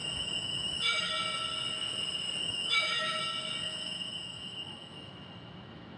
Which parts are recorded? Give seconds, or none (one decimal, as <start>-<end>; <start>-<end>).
1.1-2.4; 3.2-3.6